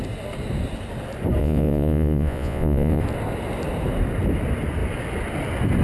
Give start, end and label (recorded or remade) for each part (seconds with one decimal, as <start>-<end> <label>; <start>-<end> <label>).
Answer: 0.0-1.4 recorded; 1.4-3.0 remade; 3.0-5.8 recorded